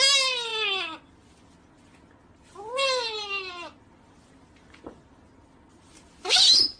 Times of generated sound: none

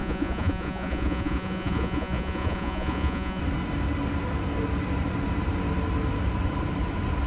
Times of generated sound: 0.0-3.4 (vocoder, Vocos)

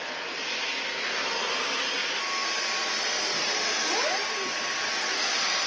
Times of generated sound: none

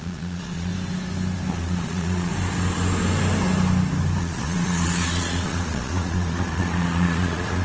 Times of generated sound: 0.0-0.7 (vocoder, Vocos); 1.5-2.3; 4.2-7.6

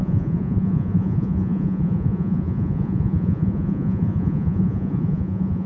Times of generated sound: 0.0-5.7 (vocoder, Vocos)

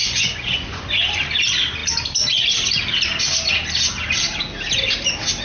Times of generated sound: 0.0-1.2 (vocoder, Vocos)

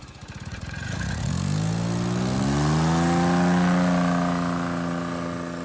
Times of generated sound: 0.5-1.3 (vocoder, Vocos)